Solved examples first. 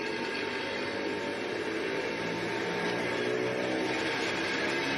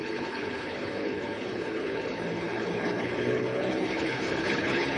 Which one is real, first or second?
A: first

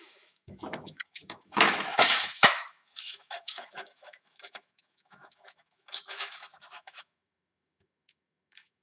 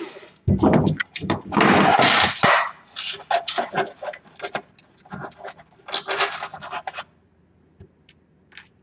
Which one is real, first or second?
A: second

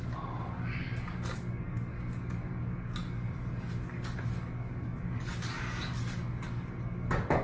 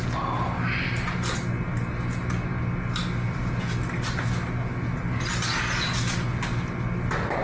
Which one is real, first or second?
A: second